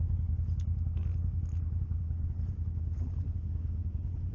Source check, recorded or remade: recorded